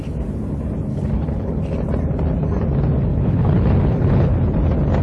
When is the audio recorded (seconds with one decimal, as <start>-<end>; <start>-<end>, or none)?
0.0-0.9; 1.6-3.1; 4.4-5.0